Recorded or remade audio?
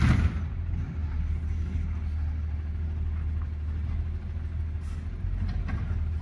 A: recorded